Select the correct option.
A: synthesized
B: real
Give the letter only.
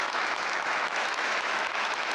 A